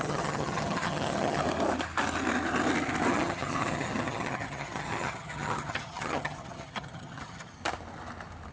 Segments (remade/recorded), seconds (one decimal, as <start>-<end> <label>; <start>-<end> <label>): 0.0-1.4 remade; 1.4-3.1 recorded; 3.1-7.6 remade; 7.6-8.5 recorded